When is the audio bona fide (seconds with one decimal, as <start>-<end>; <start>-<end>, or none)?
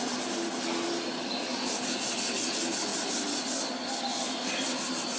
0.0-5.2